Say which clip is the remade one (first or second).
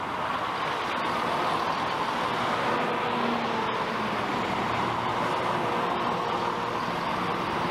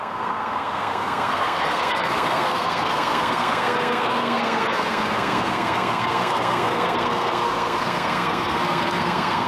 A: second